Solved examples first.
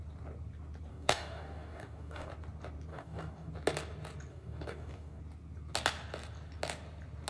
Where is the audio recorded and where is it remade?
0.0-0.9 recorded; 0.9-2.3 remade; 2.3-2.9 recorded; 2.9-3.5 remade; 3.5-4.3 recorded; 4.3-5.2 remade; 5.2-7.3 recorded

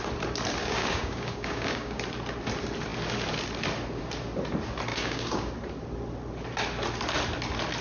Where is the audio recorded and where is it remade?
0.0-0.6 recorded; 0.6-2.0 remade; 2.0-4.9 recorded; 4.9-5.5 remade; 5.5-7.8 recorded